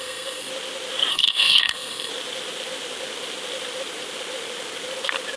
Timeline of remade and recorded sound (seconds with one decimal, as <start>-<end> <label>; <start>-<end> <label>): 0.0-0.5 remade; 0.5-1.1 recorded; 1.1-2.1 remade; 2.1-5.4 recorded